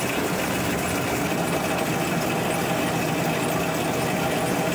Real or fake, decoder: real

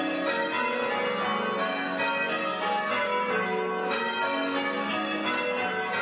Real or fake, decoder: real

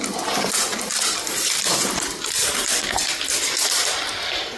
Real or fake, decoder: real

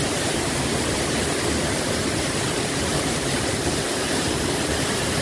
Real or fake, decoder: fake, vocoder, BigVGAN v2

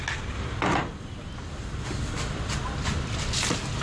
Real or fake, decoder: real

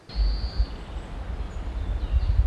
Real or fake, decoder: real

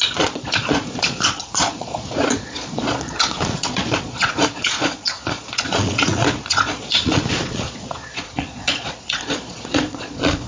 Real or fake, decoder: fake, vocoder, Vocos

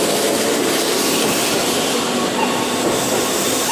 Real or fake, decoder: real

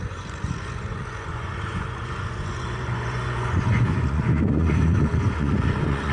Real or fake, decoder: fake, vocoder, Vocos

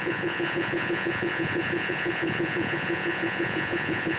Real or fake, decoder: fake, vocoder, Vocos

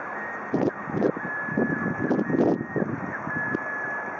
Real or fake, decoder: real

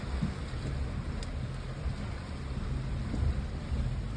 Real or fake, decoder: real